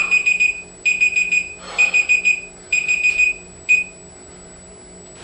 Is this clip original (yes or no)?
yes